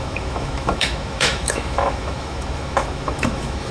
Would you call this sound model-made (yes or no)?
yes